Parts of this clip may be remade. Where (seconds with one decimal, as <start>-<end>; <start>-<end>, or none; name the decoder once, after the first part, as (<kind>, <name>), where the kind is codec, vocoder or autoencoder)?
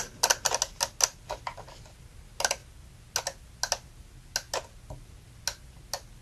none